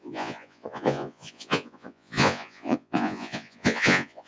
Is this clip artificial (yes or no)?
yes